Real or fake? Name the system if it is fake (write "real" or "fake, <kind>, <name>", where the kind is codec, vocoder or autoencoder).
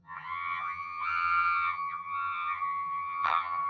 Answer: fake, vocoder, HiFi-GAN